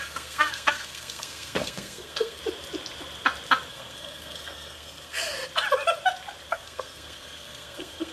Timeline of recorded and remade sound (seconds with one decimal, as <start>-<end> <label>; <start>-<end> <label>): 0.0-2.4 remade; 2.4-3.7 recorded; 3.7-5.4 remade; 5.4-6.5 recorded; 6.5-8.1 remade